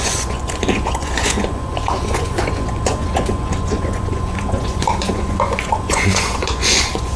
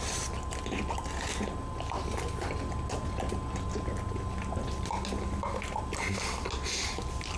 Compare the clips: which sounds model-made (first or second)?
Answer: first